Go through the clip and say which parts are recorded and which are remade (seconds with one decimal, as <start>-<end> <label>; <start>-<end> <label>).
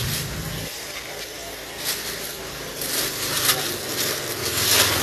0.0-5.0 recorded